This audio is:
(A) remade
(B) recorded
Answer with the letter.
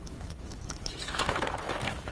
A